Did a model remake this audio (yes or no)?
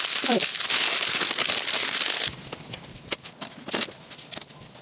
no